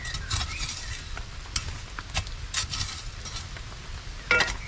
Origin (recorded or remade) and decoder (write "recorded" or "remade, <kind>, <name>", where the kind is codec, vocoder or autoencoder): recorded